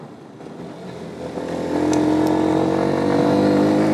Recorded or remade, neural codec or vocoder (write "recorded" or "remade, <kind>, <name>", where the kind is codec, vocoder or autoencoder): recorded